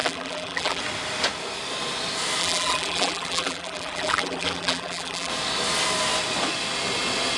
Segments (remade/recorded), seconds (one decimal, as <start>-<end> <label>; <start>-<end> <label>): 0.0-0.8 remade; 0.8-2.4 recorded; 2.4-5.3 remade; 5.3-7.4 recorded